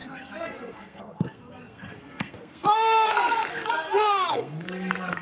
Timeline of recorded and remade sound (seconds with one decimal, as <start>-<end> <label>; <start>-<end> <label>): 0.0-5.2 remade